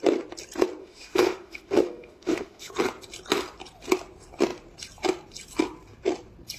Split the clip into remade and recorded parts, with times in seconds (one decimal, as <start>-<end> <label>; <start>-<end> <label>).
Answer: 0.0-0.8 recorded; 0.8-2.7 remade; 2.7-6.6 recorded